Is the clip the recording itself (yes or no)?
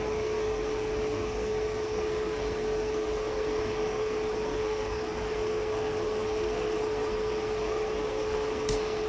no